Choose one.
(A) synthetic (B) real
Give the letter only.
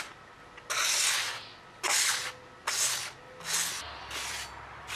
B